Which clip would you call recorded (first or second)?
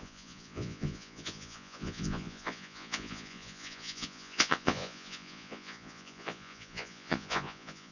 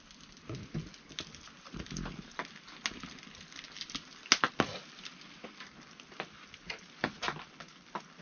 second